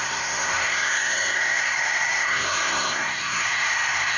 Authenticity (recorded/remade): remade